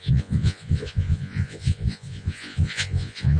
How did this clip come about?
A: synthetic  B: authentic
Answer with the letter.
A